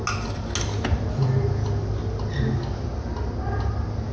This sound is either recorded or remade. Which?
recorded